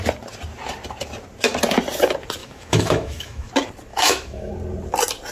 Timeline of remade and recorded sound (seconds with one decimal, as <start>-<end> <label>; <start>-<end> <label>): 0.0-2.4 recorded; 2.4-3.5 remade; 3.5-3.9 recorded; 3.9-4.5 remade; 4.5-5.3 recorded